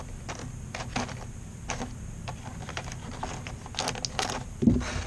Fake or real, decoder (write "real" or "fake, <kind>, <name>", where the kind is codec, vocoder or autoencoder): real